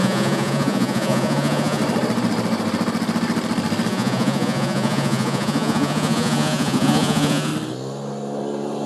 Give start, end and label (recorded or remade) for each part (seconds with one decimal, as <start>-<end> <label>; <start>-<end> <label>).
0.0-1.8 remade; 1.8-3.9 recorded; 3.9-7.5 remade; 7.5-8.9 recorded